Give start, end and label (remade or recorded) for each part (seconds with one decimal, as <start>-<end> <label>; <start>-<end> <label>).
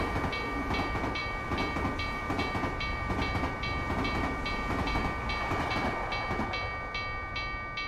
0.0-5.0 remade; 5.0-7.9 recorded